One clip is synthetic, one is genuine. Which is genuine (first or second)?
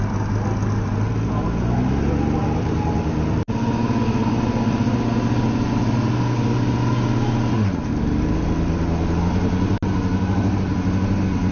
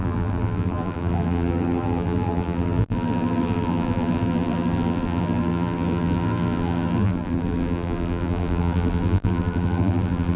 first